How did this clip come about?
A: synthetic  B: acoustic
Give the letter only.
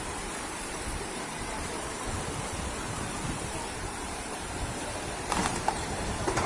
A